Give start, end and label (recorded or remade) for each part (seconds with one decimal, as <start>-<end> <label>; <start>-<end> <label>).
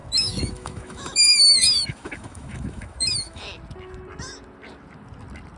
0.0-3.4 remade; 3.4-5.6 recorded